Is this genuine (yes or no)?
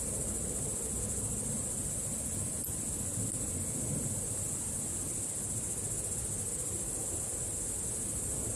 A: yes